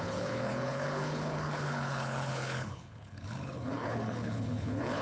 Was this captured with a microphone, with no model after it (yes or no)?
no